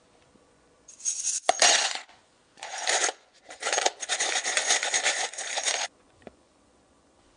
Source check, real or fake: fake